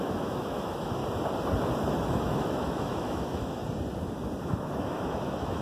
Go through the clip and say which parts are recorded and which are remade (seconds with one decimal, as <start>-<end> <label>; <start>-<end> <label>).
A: 0.0-1.0 remade; 1.0-1.9 recorded; 1.9-3.6 remade; 3.6-4.4 recorded; 4.4-5.6 remade